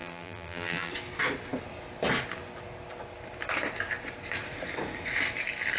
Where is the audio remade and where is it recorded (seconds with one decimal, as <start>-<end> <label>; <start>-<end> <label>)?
0.0-0.9 remade; 0.9-5.8 recorded